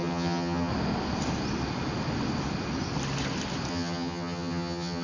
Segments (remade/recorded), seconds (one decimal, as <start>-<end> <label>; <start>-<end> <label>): 0.0-0.7 remade; 0.7-3.7 recorded; 3.7-5.0 remade

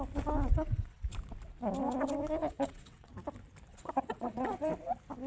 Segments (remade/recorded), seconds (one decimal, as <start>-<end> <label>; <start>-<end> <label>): 0.0-0.5 recorded; 0.5-1.0 remade; 1.0-2.4 recorded; 2.4-3.1 remade; 3.1-3.7 recorded; 3.7-4.7 remade; 4.7-5.3 recorded

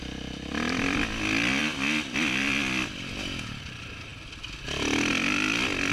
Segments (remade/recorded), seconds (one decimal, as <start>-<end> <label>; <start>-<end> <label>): 0.0-5.9 recorded

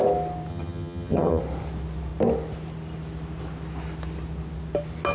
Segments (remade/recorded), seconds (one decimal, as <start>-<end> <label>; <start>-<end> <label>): 0.0-0.5 recorded; 0.5-1.4 remade; 1.4-5.1 recorded